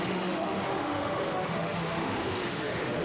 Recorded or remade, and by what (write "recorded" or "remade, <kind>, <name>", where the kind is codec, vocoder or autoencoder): remade, autoencoder, DAC-VAE